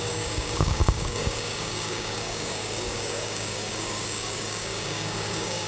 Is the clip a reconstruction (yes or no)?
yes